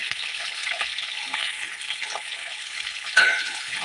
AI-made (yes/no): yes